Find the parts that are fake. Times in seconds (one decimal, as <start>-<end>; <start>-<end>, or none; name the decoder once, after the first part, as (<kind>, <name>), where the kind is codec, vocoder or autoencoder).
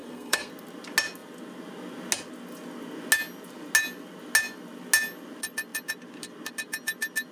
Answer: 0.0-0.5 (codec, SNAC)